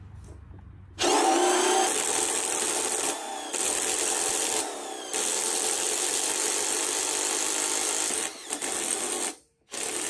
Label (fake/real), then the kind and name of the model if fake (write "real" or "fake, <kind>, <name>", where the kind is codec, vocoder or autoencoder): real